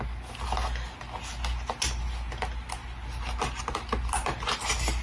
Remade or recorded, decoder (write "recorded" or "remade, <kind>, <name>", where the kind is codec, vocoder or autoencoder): recorded